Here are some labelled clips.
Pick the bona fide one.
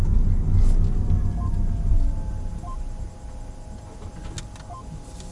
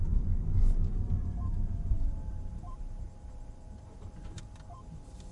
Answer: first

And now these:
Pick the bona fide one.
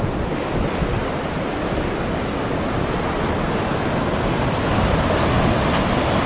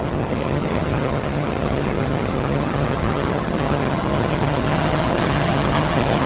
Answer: first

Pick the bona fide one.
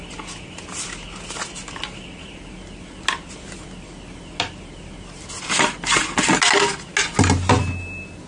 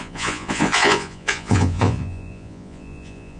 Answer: first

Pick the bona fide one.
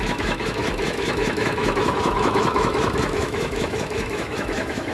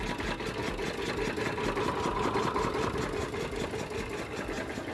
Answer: second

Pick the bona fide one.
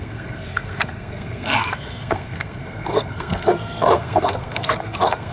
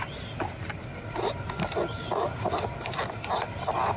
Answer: second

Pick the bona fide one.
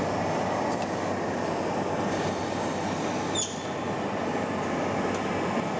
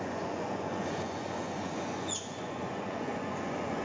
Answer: first